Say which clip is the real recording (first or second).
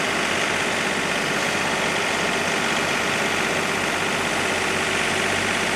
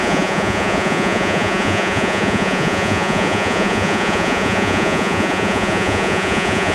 first